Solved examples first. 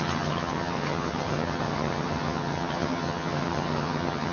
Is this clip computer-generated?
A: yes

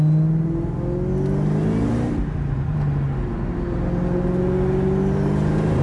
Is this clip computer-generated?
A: no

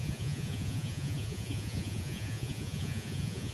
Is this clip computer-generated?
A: yes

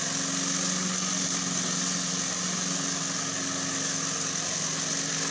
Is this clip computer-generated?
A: no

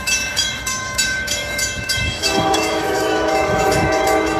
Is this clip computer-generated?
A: yes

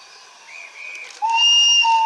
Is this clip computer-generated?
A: no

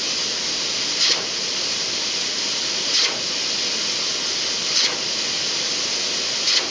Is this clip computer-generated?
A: no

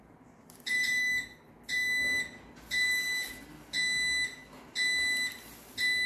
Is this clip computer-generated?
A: no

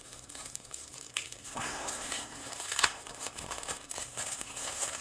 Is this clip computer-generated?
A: yes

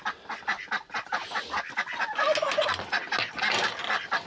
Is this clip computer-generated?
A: no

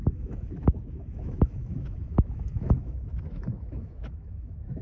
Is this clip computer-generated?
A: yes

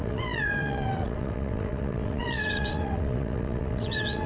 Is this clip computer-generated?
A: yes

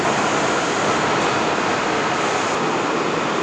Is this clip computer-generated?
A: no